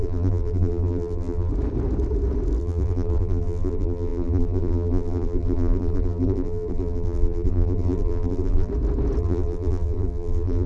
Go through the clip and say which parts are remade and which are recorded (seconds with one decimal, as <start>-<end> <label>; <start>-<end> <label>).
0.0-1.5 remade; 1.5-2.6 recorded; 2.6-8.7 remade; 8.7-9.2 recorded; 9.2-10.7 remade